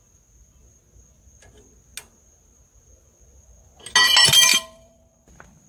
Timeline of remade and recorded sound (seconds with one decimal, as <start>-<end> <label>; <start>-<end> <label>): 0.0-4.5 recorded; 4.5-5.3 remade; 5.3-5.7 recorded

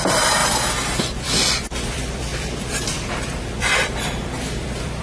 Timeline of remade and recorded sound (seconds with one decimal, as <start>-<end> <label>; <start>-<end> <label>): 0.0-0.4 remade; 0.4-1.0 recorded; 1.0-5.0 remade

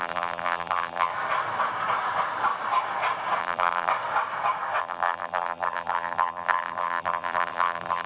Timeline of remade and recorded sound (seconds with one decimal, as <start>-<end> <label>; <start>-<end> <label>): 0.0-1.1 remade; 1.1-3.4 recorded; 3.4-3.9 remade; 3.9-4.8 recorded; 4.8-8.1 remade

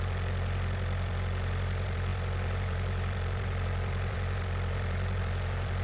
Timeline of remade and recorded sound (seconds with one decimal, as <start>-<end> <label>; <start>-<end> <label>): 0.0-5.8 remade